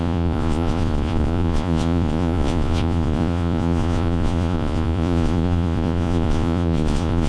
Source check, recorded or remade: remade